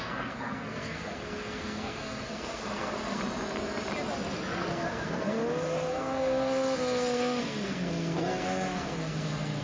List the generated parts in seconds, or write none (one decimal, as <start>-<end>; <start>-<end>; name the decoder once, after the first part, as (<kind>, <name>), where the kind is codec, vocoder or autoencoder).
0.0-3.2 (codec, SNAC); 4.7-5.4; 5.9-9.6